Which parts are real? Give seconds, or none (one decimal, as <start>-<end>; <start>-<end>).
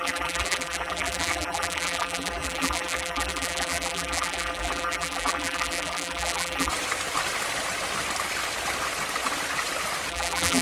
6.7-10.1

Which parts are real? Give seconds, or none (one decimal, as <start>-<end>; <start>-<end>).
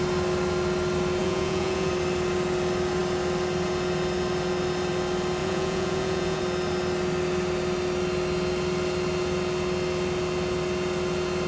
0.0-1.2; 1.9-5.4; 6.4-11.5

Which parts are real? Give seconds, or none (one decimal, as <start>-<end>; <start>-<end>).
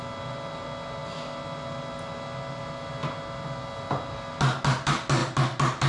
0.0-5.9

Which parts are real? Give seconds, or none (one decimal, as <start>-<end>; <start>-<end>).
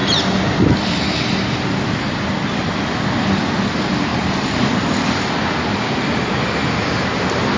1.0-4.1; 5.5-7.6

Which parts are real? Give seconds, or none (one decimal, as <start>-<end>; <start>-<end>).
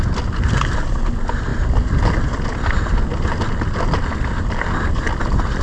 0.0-5.6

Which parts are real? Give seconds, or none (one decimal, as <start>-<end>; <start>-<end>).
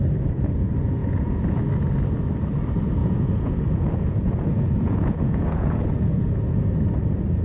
0.0-1.0; 1.6-3.0; 6.7-7.4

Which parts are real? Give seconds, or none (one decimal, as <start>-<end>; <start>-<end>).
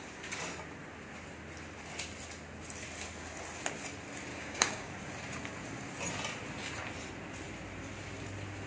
0.0-4.3; 4.9-8.7